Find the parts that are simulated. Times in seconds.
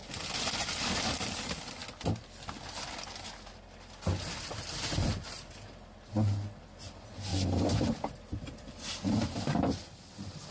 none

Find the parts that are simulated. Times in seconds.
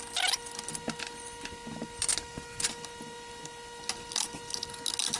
none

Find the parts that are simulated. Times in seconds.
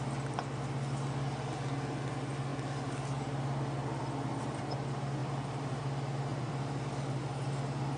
5.2-5.8 (vocoder, BigVGAN v2); 6.3-7.2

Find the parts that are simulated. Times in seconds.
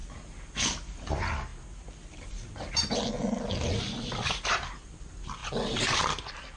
none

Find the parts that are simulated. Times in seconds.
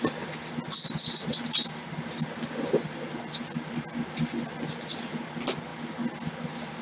none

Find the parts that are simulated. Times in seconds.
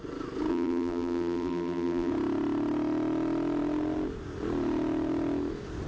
0.5-2.1 (vocoder, BigVGAN v2)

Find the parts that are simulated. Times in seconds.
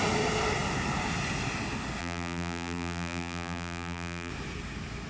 2.0-4.3 (vocoder, BigVGAN v2)